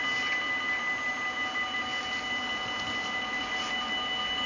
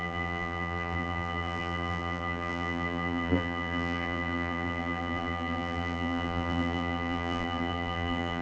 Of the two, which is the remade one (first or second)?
second